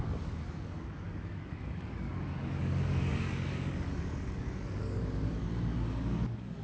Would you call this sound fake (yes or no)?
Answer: yes